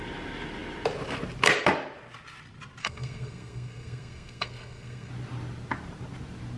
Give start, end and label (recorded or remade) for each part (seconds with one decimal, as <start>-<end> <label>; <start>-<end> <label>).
0.0-2.8 recorded; 2.8-5.1 remade; 5.1-6.6 recorded